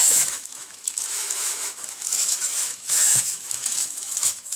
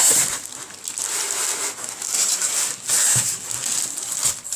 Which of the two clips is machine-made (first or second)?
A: first